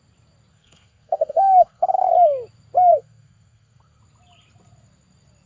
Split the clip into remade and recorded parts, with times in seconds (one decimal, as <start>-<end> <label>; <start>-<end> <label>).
0.0-0.5 recorded; 0.5-2.1 remade; 2.1-2.9 recorded; 2.9-4.0 remade; 4.0-5.5 recorded